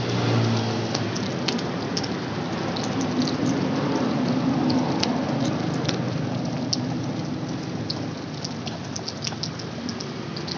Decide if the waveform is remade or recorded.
recorded